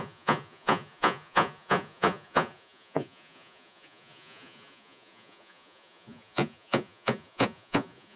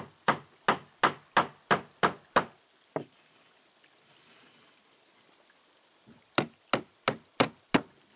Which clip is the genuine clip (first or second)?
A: second